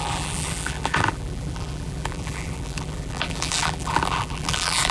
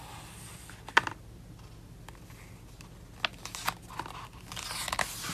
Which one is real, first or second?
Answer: second